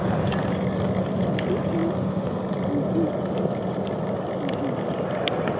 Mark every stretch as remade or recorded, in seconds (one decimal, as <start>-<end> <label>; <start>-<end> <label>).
0.0-5.6 recorded